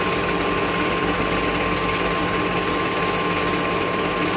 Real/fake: real